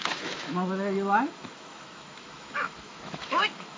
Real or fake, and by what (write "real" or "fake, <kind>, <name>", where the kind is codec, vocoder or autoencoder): fake, autoencoder, DAC-VAE